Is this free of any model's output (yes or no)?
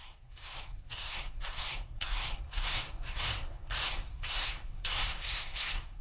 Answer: no